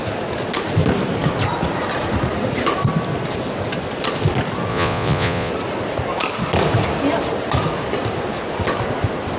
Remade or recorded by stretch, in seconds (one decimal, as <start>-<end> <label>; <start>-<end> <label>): 0.0-4.7 recorded; 4.7-5.5 remade; 5.5-9.4 recorded